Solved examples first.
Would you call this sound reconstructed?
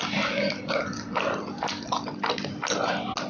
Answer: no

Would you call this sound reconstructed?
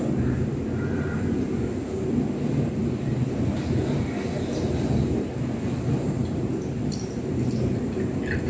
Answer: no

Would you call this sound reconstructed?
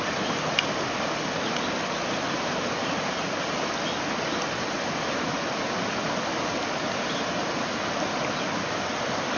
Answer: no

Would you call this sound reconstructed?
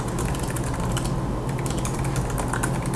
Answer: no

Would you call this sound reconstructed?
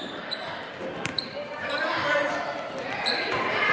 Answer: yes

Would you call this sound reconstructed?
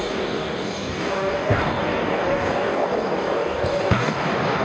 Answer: yes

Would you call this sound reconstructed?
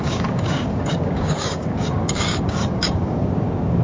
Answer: yes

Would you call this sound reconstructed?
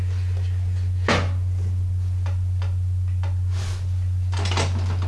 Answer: no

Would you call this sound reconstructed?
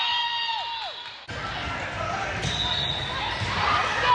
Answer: no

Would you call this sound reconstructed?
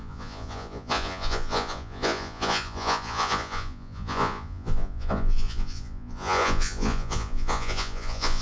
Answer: yes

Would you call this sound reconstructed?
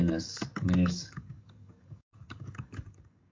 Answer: yes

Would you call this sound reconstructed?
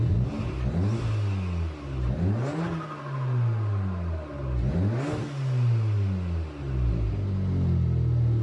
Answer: no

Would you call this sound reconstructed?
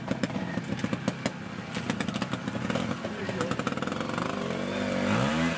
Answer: no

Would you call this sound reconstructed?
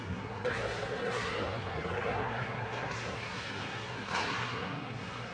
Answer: yes